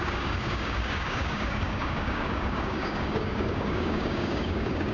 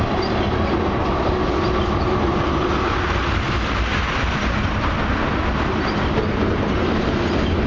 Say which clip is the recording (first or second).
second